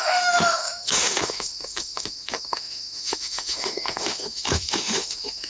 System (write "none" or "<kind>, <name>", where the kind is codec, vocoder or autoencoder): autoencoder, DAC-VAE